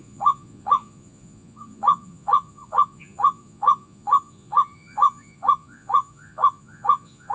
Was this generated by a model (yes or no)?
yes